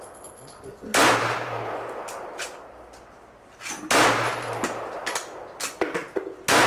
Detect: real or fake real